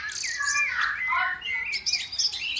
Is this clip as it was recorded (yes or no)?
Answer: yes